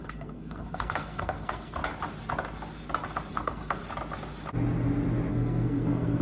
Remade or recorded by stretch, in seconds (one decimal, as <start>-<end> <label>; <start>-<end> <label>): 0.0-1.8 remade; 1.8-3.3 recorded; 3.3-3.8 remade; 3.8-5.3 recorded; 5.3-6.2 remade